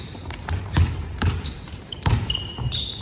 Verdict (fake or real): fake